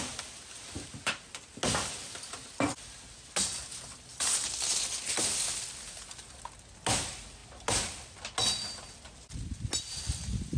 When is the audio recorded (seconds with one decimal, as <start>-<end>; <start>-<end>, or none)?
0.0-10.6